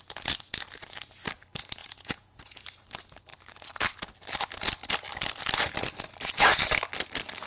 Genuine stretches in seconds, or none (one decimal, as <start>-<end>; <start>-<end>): 0.0-1.8; 2.6-7.5